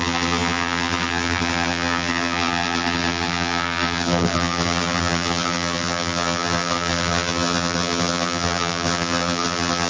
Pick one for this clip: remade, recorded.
remade